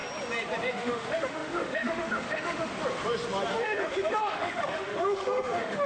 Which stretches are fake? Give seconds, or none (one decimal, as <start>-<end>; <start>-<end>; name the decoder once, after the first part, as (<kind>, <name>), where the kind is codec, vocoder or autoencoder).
0.7-2.7 (autoencoder, DAC-VAE); 3.5-5.9